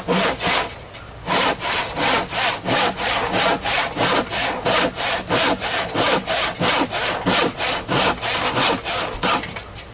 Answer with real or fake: real